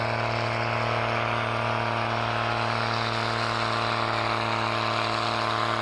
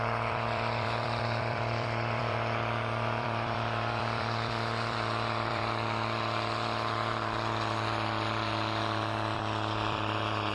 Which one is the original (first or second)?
first